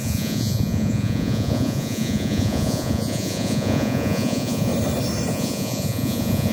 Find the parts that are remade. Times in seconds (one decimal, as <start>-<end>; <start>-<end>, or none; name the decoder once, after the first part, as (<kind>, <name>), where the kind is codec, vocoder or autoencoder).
0.0-4.7 (vocoder, Vocos); 5.3-6.5